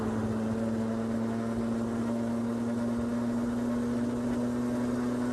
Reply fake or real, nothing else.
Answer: real